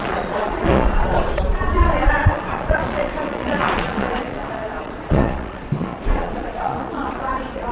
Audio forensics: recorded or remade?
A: remade